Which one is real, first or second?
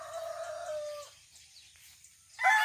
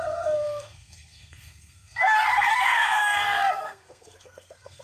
first